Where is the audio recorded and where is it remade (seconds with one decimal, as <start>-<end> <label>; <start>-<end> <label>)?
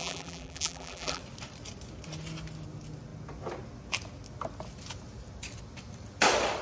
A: 0.0-1.2 remade; 1.2-6.6 recorded